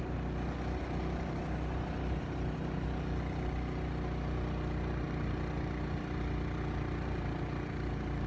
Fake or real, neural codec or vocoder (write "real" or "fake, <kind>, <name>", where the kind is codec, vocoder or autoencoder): real